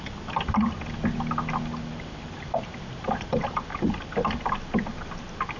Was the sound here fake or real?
real